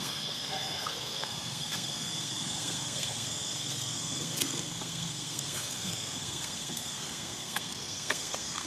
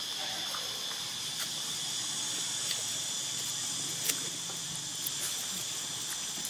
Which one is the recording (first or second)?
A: second